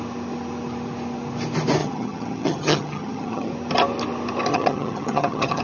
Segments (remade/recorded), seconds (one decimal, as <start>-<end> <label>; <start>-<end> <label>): 0.0-1.8 recorded; 1.8-3.5 remade; 3.5-4.5 recorded; 4.5-5.6 remade